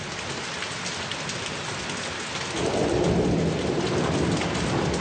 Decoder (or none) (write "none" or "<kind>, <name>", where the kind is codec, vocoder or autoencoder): none